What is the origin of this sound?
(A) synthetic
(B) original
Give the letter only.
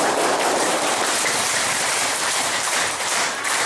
A